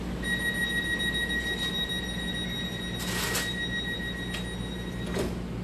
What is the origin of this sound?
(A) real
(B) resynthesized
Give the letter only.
A